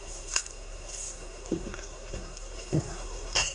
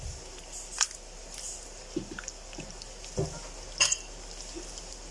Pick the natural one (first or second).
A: second